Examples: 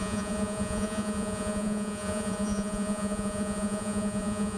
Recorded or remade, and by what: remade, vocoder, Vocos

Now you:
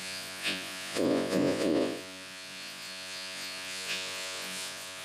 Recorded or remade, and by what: remade, vocoder, Vocos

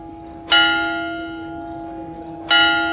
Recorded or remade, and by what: recorded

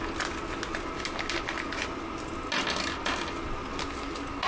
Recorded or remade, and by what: recorded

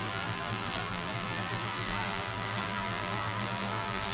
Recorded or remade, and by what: remade, vocoder, BigVGAN v2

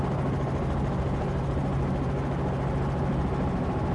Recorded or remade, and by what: recorded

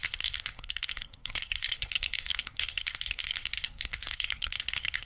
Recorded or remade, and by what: remade, codec, SNAC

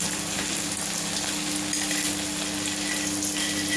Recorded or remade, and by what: recorded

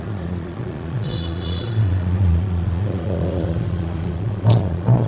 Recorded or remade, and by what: remade, vocoder, Vocos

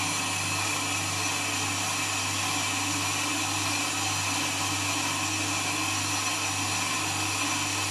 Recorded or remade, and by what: recorded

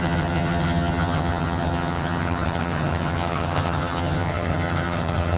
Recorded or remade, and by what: remade, vocoder, HiFi-GAN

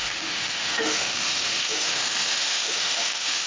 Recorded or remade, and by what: remade, autoencoder, DAC-VAE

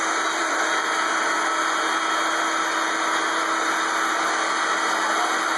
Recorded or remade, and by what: recorded